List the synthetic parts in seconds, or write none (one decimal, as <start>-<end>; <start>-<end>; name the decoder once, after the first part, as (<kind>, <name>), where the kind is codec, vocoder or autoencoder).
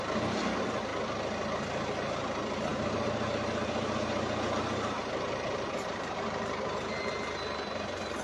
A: 2.7-7.1 (vocoder, BigVGAN v2)